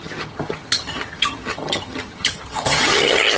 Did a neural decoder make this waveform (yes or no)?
yes